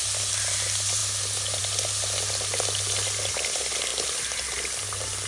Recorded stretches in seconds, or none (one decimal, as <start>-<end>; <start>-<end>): 0.0-5.3